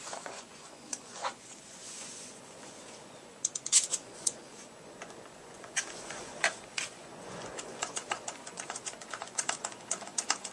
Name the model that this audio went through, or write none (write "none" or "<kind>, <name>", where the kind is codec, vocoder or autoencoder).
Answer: vocoder, Vocos